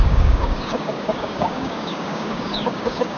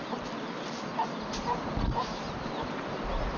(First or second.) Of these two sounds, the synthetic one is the first